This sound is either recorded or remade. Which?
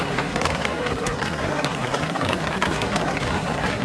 remade